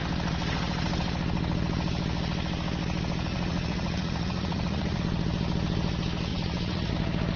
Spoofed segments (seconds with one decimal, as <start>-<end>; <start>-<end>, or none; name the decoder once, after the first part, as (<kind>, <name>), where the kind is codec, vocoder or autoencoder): 3.3-5.0 (vocoder, Vocos); 6.3-6.9